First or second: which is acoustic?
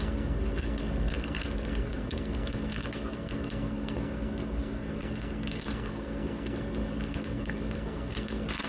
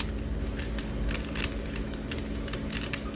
second